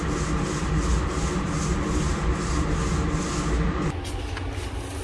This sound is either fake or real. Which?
real